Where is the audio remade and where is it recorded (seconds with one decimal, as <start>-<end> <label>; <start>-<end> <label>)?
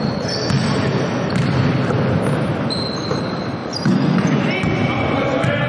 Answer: 0.0-3.6 recorded; 3.6-4.4 remade; 4.4-5.7 recorded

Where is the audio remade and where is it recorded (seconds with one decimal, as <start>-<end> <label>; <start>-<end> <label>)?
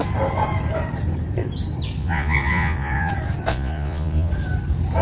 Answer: 0.0-2.0 recorded; 2.0-3.1 remade; 3.1-3.5 recorded; 3.5-4.3 remade; 4.3-5.0 recorded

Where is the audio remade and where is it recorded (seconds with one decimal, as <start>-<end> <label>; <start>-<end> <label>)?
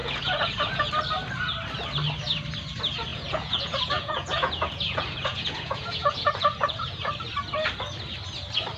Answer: 0.0-0.9 remade; 0.9-3.1 recorded; 3.1-7.1 remade; 7.1-8.8 recorded